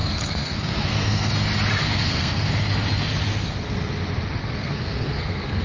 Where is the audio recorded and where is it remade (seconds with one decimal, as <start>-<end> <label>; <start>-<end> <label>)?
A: 0.0-1.3 remade; 1.3-1.8 recorded; 1.8-2.5 remade; 2.5-4.4 recorded; 4.4-5.6 remade